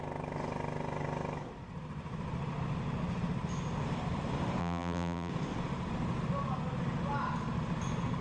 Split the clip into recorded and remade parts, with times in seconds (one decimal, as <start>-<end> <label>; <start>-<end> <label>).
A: 0.0-4.6 recorded; 4.6-5.3 remade; 5.3-8.2 recorded